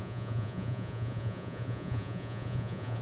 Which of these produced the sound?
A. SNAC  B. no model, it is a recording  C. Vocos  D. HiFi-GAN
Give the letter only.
C